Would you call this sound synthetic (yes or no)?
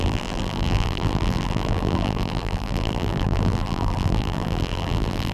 yes